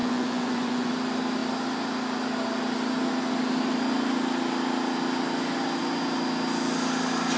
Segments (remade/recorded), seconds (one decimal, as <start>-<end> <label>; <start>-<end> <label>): 0.0-0.9 remade; 0.9-7.4 recorded